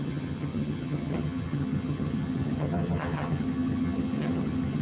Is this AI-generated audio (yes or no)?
yes